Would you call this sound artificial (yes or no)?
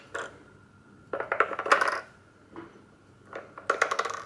no